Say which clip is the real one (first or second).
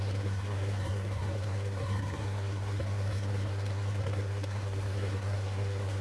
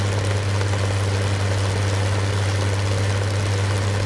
second